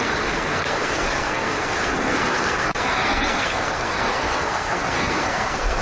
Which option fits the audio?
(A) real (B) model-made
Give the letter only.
B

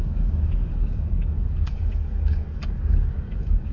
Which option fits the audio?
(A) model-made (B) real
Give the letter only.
A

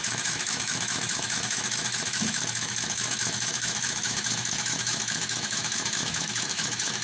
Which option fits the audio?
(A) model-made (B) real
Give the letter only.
A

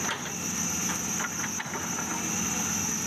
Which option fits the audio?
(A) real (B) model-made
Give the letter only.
A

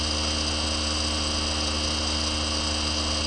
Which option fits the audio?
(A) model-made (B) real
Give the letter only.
B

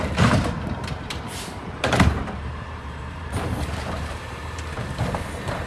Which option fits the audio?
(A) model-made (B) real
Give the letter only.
A